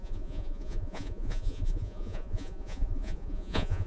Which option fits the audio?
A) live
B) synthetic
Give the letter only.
B